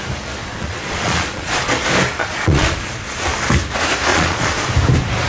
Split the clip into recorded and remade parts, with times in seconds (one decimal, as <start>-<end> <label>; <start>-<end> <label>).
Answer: 0.0-0.4 recorded; 0.4-1.7 remade; 1.7-2.2 recorded; 2.2-3.2 remade; 3.2-4.1 recorded; 4.1-4.7 remade; 4.7-5.3 recorded